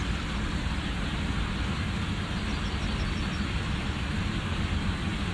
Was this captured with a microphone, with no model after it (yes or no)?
yes